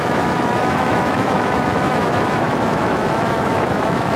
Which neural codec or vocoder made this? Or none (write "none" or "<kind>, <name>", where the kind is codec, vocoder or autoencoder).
autoencoder, DAC-VAE